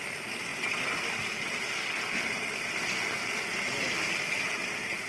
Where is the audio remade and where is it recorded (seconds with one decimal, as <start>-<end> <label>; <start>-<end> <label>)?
0.0-5.1 recorded